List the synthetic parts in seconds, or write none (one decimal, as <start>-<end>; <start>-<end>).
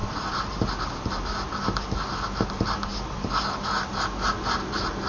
none